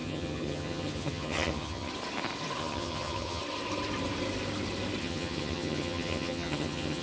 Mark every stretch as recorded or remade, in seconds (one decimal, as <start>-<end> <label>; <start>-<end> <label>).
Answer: 0.0-1.9 remade; 1.9-2.6 recorded; 2.6-3.4 remade; 3.4-5.0 recorded; 5.0-7.0 remade